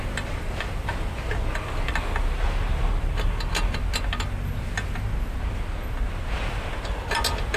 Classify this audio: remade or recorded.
recorded